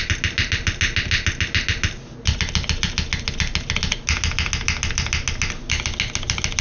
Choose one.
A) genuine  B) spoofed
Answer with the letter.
A